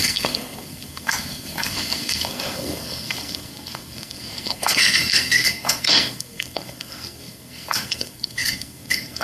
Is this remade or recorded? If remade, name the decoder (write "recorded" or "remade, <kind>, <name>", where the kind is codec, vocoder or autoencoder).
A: remade, codec, SNAC